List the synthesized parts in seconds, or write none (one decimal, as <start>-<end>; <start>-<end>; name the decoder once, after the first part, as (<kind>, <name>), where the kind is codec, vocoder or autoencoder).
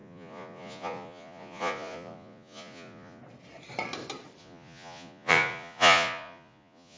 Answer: 0.0-3.2 (vocoder, Vocos); 4.4-7.0